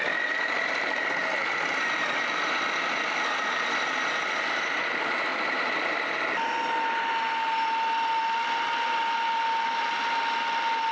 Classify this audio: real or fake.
real